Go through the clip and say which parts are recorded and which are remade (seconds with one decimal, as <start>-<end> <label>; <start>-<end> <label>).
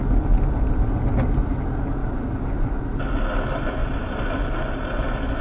0.0-2.0 recorded; 2.0-2.8 remade; 2.8-3.8 recorded; 3.8-5.4 remade